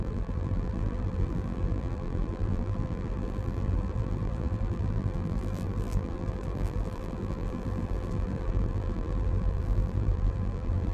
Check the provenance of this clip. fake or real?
fake